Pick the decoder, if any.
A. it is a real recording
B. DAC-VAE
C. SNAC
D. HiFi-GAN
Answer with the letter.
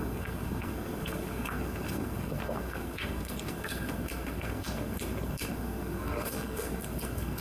C